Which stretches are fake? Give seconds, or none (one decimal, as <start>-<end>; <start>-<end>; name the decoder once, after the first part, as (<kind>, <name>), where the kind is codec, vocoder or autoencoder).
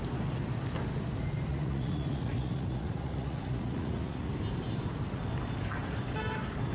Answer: 1.5-4.3 (vocoder, Vocos)